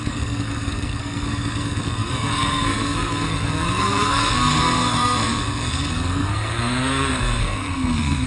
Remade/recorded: remade